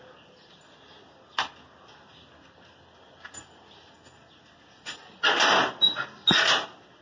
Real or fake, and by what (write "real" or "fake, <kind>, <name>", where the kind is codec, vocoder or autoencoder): real